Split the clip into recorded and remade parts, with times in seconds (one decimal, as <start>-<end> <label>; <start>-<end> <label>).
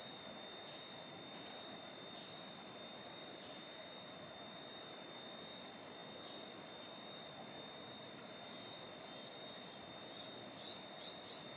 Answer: 0.0-11.6 recorded